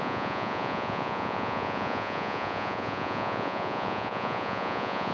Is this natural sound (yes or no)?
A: no